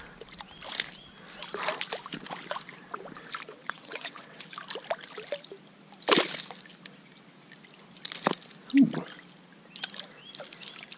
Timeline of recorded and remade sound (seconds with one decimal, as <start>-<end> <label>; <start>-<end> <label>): 0.0-3.5 recorded; 3.5-4.4 remade; 4.4-11.0 recorded